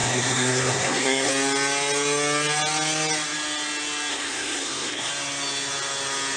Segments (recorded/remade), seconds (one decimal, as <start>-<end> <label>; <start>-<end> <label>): 0.0-1.3 remade; 1.3-4.1 recorded; 4.1-5.1 remade; 5.1-6.4 recorded